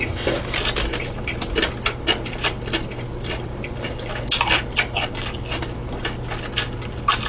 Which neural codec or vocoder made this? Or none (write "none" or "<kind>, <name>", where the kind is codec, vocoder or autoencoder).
none